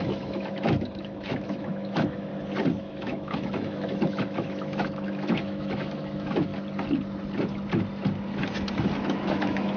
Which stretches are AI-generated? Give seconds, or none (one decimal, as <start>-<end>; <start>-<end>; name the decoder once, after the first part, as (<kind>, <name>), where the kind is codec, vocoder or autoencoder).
0.0-2.3 (autoencoder, DAC-VAE); 2.8-6.5; 9.0-9.8